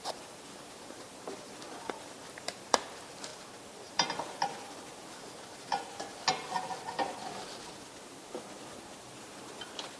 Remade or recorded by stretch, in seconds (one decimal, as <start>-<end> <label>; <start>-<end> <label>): 0.0-3.3 remade; 3.3-3.9 recorded; 3.9-5.7 remade; 5.7-8.8 recorded; 8.8-10.0 remade